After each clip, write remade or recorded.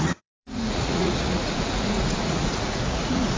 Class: remade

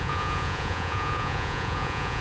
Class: remade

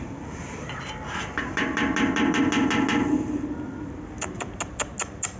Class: recorded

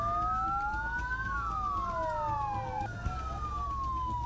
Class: recorded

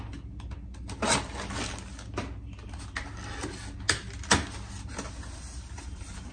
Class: recorded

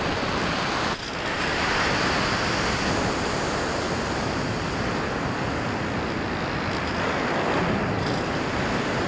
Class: recorded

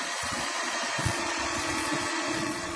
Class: remade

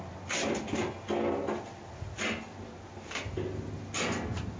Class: recorded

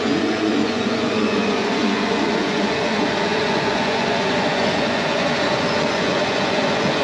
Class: remade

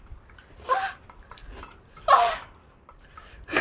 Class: recorded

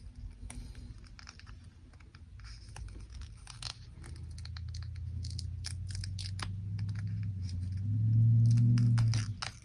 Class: recorded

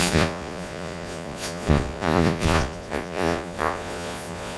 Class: remade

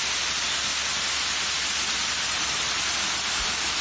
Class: recorded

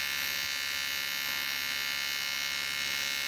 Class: recorded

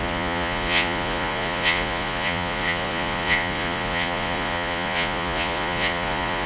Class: remade